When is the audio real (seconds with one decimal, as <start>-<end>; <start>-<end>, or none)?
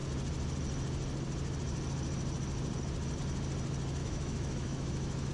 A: 0.0-4.0